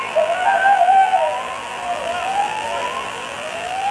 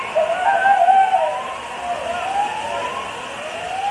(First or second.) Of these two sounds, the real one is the second